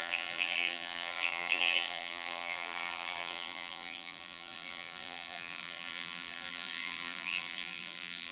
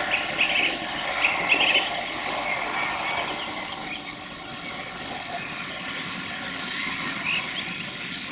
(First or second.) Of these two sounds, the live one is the second